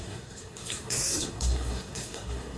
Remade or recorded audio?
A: remade